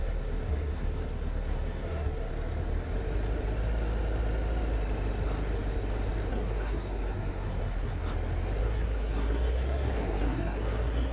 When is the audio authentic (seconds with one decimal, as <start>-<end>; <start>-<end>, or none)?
2.3-6.3; 8.0-8.6